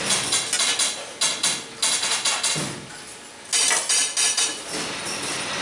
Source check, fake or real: real